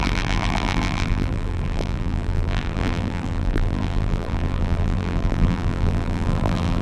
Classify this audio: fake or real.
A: fake